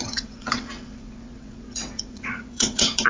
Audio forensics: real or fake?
fake